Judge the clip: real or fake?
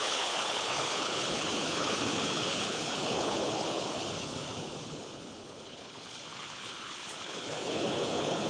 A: fake